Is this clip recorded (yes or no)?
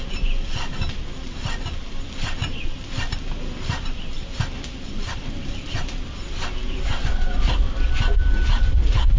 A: yes